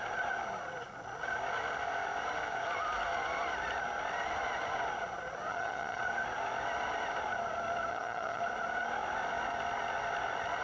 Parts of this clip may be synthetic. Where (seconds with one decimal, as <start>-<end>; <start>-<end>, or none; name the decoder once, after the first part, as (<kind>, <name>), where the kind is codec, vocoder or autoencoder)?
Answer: 5.5-6.0 (vocoder, HiFi-GAN); 7.9-8.4